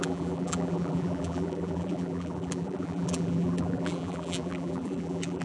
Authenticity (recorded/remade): remade